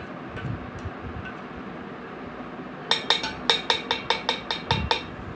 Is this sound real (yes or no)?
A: yes